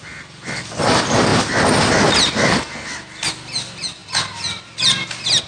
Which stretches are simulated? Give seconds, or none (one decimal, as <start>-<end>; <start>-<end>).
none